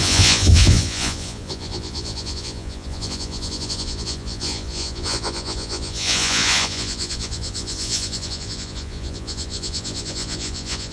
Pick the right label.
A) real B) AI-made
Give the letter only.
B